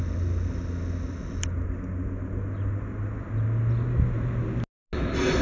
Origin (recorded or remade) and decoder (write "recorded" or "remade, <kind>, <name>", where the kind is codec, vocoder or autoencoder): recorded